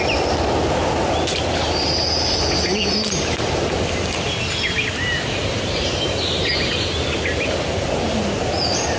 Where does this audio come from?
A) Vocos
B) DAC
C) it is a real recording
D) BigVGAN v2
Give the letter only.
C